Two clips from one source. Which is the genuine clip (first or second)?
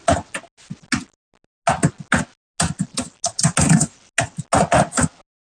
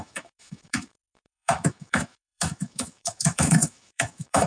first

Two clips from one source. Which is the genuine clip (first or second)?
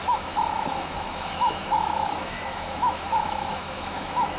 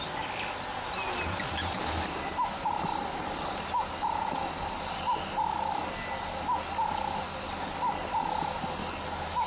second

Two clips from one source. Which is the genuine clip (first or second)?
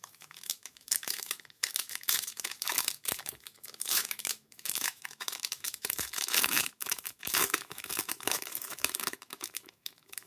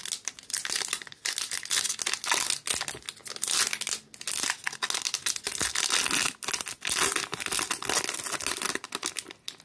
second